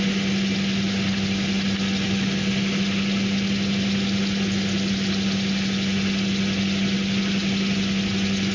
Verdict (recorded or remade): recorded